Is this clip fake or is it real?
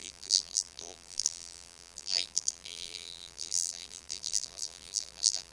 fake